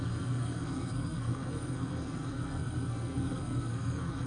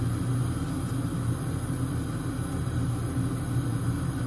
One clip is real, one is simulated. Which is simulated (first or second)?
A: first